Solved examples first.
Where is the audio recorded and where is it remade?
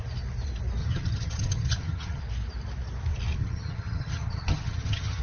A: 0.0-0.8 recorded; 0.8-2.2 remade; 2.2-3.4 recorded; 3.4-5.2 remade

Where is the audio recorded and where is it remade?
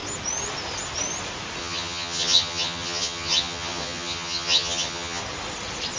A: 0.0-1.6 recorded; 1.6-5.2 remade; 5.2-6.0 recorded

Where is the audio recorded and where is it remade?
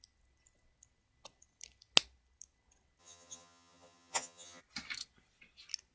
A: 0.0-3.0 recorded; 3.0-4.6 remade; 4.6-5.9 recorded